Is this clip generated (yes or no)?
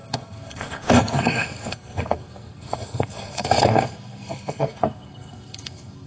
yes